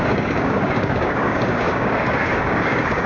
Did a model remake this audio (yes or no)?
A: yes